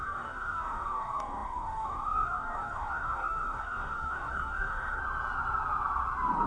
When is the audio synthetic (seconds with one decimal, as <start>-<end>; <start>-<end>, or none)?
0.0-5.0